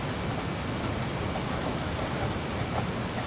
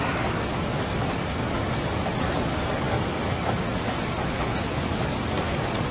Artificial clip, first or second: second